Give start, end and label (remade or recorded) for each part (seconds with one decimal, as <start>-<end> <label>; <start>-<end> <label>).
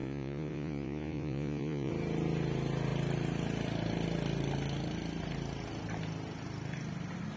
0.0-1.9 remade; 1.9-7.4 recorded